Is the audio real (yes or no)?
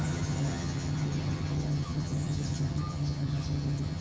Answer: no